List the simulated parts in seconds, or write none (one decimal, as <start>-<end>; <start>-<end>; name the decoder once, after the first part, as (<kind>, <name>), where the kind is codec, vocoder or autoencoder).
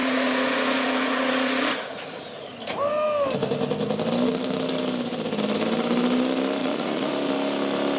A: 0.0-2.5 (vocoder, Vocos); 6.6-7.1